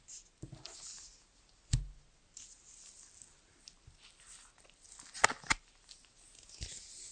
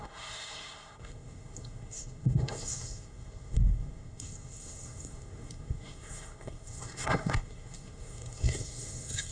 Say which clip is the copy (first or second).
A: second